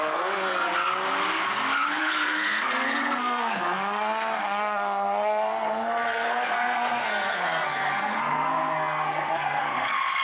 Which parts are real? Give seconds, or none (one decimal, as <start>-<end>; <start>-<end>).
0.7-2.0